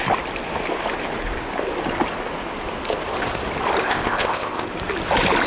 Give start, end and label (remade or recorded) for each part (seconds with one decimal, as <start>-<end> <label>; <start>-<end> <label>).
0.0-3.8 recorded; 3.8-4.7 remade; 4.7-5.5 recorded